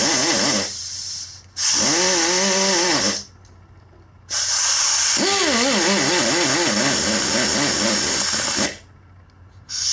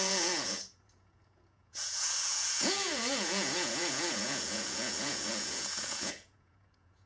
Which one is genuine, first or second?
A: first